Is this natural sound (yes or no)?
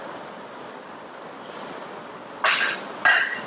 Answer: yes